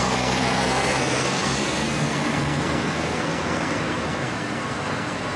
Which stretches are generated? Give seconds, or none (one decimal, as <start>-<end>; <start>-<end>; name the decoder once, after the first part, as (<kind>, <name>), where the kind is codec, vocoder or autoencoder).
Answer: 0.0-5.4 (codec, SNAC)